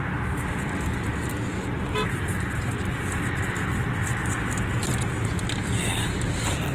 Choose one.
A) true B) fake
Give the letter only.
A